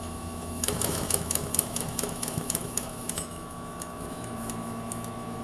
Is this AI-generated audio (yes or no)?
yes